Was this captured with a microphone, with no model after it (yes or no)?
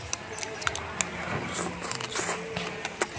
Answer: yes